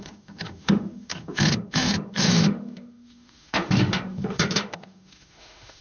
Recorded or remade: remade